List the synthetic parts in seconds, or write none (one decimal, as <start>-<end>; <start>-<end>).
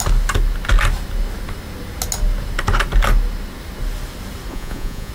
4.5-5.1